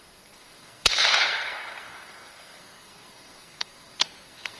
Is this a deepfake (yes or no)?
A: yes